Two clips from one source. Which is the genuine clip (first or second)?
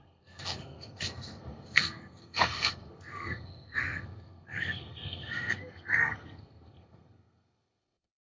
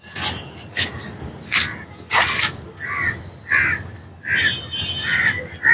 second